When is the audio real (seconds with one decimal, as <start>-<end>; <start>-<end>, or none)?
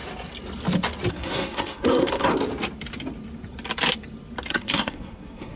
0.0-1.1; 2.3-4.5